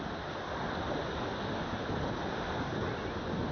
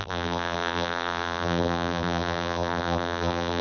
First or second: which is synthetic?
second